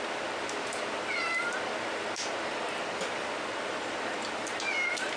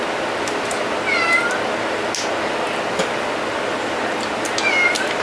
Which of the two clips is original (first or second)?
second